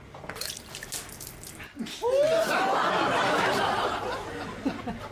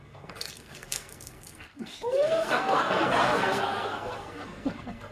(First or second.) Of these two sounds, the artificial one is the second